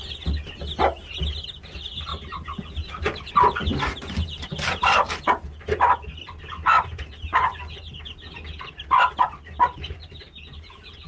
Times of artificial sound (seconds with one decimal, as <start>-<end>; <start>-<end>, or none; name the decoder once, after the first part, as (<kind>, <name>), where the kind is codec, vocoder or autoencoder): none